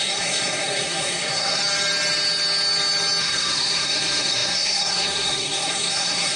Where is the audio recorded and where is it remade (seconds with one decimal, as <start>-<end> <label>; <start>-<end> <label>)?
0.0-1.6 remade; 1.6-3.2 recorded; 3.2-6.4 remade